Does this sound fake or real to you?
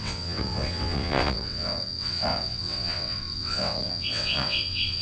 fake